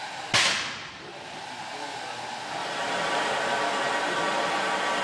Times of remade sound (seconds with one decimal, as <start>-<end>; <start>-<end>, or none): 2.6-3.3